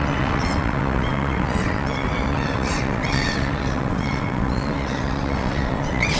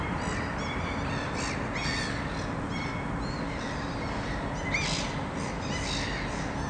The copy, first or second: first